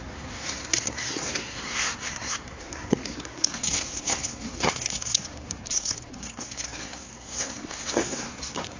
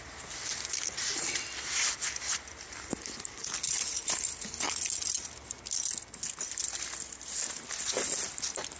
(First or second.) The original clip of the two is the second